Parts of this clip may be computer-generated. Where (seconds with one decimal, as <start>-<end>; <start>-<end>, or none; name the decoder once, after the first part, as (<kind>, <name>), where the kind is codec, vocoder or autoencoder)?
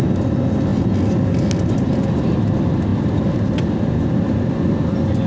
none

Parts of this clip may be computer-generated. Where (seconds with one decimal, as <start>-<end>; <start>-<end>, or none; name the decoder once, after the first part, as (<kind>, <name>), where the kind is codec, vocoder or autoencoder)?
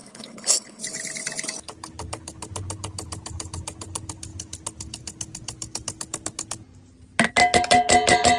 0.0-0.8 (codec, HILCodec)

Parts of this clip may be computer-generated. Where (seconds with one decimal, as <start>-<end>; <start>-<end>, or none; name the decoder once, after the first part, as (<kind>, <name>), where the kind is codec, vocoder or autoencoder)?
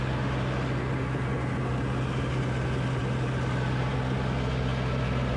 1.7-2.4 (vocoder, BigVGAN v2); 3.0-3.9; 4.7-5.4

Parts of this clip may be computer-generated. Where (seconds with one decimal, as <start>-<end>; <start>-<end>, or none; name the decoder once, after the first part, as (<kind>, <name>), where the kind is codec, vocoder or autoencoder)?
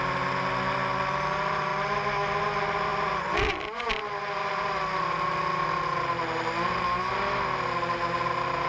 none